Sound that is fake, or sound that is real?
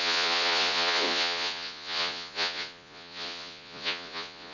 fake